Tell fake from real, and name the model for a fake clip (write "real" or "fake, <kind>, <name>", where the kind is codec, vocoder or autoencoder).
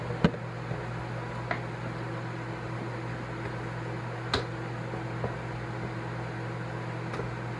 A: real